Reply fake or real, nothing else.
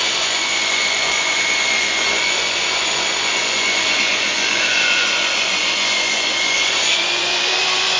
fake